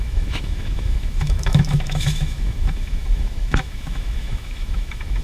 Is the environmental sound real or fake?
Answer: fake